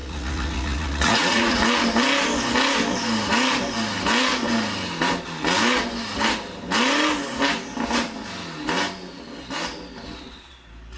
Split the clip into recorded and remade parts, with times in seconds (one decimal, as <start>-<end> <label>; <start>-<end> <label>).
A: 0.0-1.6 remade; 1.6-11.0 recorded